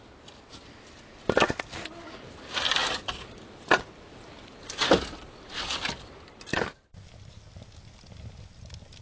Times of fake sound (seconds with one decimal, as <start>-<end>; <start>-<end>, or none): none